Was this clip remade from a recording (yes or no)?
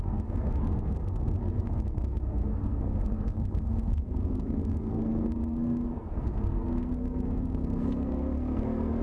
yes